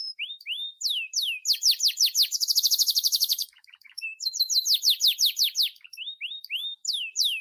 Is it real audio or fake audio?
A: fake